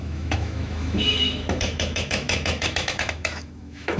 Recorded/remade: remade